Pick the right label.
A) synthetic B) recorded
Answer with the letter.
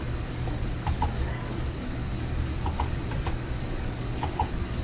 A